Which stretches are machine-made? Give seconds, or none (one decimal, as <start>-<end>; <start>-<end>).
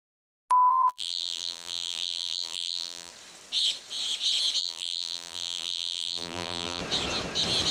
0.7-3.1; 4.6-6.8